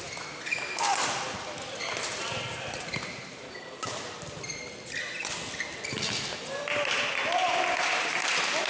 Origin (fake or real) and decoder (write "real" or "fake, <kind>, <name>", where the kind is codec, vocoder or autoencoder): real